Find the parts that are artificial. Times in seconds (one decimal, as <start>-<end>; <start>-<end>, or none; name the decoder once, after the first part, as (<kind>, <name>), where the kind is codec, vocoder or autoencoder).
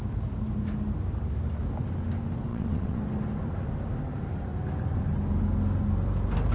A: 2.5-3.0 (vocoder, WaveNeXt)